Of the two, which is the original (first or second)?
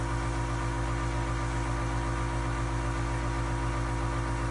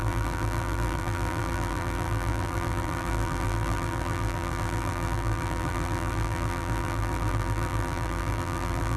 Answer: first